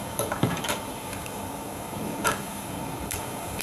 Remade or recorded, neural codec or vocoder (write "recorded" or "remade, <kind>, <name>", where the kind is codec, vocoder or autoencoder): remade, codec, DAC